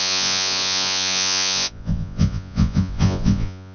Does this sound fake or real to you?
fake